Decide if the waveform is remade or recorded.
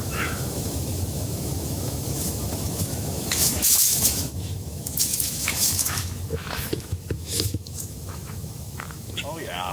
remade